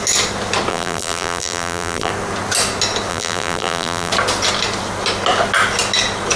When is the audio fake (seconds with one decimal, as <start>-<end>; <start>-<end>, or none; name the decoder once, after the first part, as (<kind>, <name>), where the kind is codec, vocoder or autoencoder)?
0.7-2.1 (vocoder, BigVGAN v2); 3.1-4.1